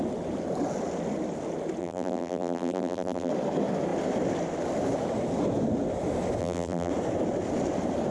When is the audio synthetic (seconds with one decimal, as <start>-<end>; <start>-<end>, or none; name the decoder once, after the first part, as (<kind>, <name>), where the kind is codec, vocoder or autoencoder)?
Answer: 1.8-3.3 (vocoder, BigVGAN v2); 6.4-6.9